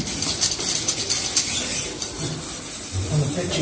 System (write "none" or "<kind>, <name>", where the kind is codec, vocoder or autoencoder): none